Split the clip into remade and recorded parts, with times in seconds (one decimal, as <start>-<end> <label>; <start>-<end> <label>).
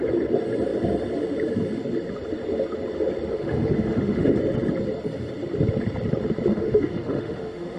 0.0-3.3 recorded; 3.3-4.4 remade; 4.4-6.5 recorded; 6.5-7.8 remade